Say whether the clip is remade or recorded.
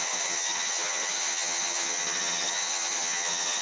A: remade